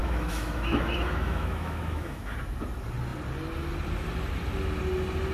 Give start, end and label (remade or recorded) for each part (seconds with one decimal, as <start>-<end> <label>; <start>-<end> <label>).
0.0-2.3 remade; 2.3-5.3 recorded